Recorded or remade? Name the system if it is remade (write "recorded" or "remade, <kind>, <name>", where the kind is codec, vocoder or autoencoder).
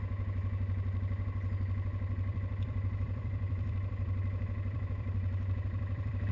remade, vocoder, BigVGAN v2